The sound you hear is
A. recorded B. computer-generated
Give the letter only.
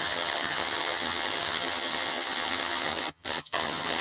B